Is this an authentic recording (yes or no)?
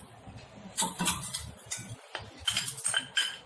yes